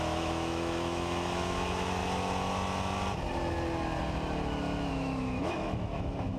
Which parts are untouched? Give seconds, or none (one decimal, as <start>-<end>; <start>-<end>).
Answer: 2.0-4.9

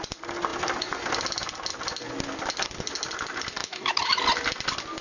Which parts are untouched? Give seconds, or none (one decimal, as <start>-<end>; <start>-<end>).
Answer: 0.0-3.6; 4.2-5.0